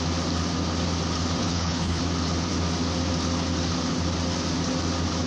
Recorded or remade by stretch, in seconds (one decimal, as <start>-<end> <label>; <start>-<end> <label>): 0.0-1.4 recorded; 1.4-2.0 remade; 2.0-5.3 recorded